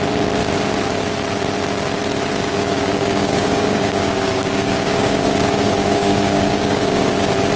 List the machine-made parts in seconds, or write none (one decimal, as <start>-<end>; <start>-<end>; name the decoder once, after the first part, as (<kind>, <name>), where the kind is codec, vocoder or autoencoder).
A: 2.5-7.1 (codec, DAC)